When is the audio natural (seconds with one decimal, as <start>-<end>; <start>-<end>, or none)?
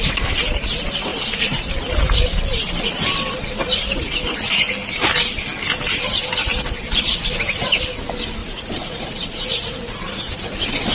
0.0-8.4; 10.4-10.9